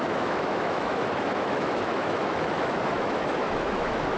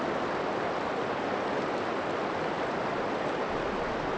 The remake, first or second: first